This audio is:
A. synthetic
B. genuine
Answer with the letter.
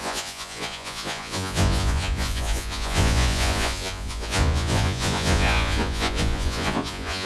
A